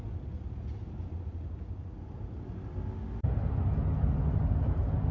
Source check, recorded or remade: recorded